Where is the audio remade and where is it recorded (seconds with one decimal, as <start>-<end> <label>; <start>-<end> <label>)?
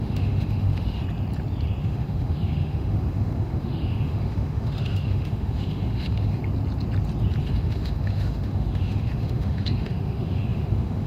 0.0-1.0 remade; 1.0-1.8 recorded; 1.8-6.4 remade; 6.4-7.4 recorded; 7.4-11.1 remade